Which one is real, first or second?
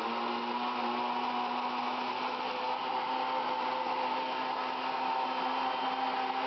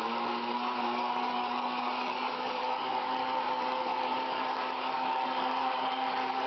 first